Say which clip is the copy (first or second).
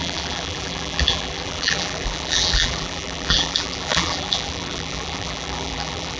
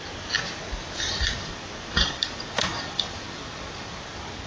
first